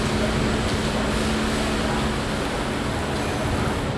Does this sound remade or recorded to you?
recorded